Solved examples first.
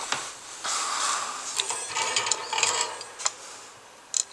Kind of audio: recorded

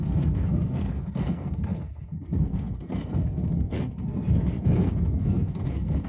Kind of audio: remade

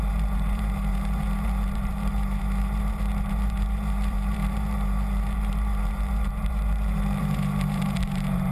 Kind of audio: remade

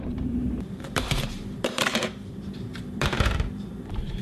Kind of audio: remade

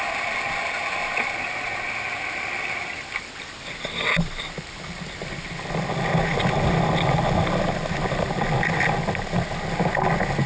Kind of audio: recorded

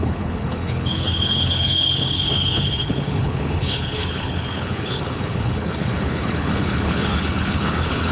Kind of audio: remade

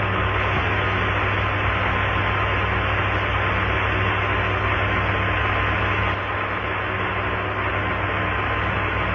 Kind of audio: recorded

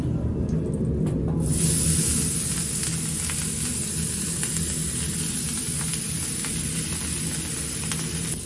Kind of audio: recorded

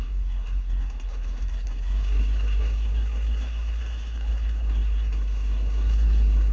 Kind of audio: remade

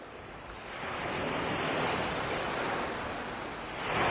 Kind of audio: recorded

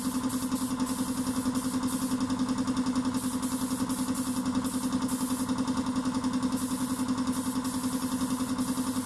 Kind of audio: recorded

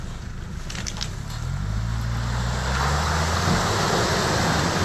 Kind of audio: recorded